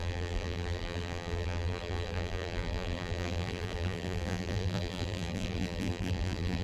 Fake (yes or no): yes